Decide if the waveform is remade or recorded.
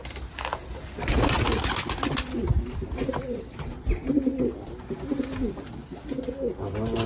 recorded